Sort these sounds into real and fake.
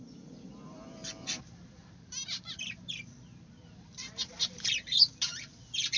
fake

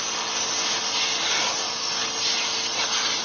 real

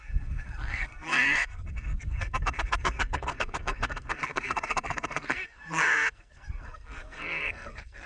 fake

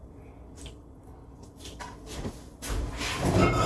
real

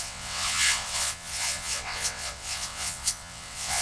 fake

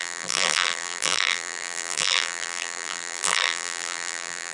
fake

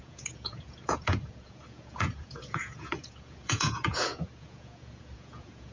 fake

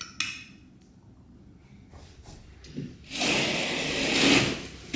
real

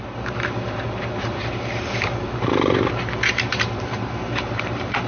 fake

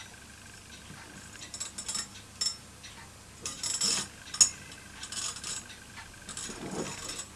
real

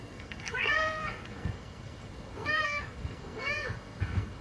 fake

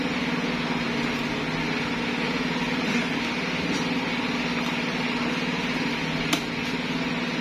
real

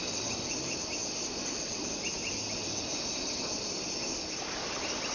real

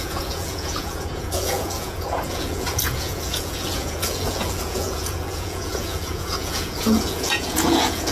fake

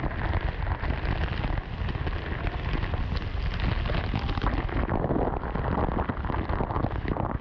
real